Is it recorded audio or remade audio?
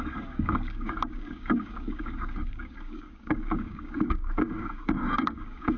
remade